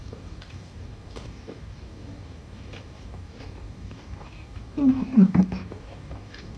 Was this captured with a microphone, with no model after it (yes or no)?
no